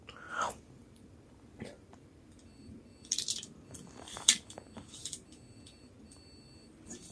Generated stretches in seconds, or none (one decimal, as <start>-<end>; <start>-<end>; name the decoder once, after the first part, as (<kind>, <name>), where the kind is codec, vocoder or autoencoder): 0.0-7.1 (vocoder, BigVGAN v2)